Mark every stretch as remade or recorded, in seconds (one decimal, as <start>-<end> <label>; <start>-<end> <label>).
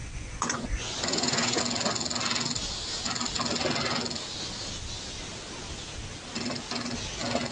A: 0.0-1.6 remade; 1.6-7.5 recorded